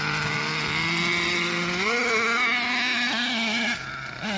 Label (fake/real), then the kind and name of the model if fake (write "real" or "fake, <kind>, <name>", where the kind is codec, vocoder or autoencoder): real